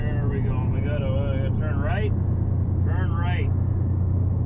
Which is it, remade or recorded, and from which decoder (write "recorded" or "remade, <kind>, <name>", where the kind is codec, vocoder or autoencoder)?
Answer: recorded